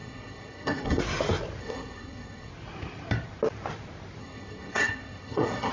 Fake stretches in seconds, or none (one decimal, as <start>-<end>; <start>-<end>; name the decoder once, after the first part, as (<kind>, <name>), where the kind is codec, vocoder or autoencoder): 0.0-1.0 (codec, SNAC); 1.6-2.5; 4.2-5.7